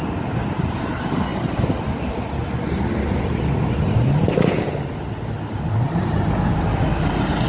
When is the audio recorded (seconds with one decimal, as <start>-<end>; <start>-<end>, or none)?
0.0-7.5